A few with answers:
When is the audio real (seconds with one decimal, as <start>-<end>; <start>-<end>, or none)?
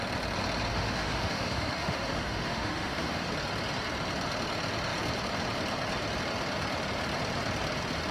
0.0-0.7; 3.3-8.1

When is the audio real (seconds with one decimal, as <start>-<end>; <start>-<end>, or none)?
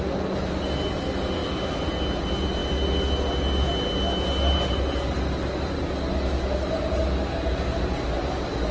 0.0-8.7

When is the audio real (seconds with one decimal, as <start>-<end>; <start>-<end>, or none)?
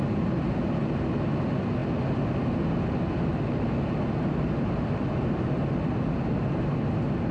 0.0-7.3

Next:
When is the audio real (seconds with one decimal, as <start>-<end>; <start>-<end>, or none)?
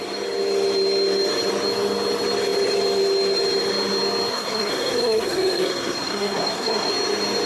0.0-4.3; 6.9-7.5